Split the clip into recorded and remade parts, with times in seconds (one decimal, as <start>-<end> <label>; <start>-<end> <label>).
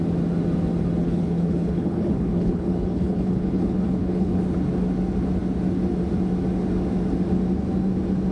0.0-1.0 recorded; 1.0-4.4 remade; 4.4-8.3 recorded